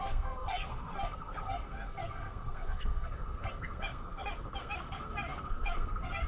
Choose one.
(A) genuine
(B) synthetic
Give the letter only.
B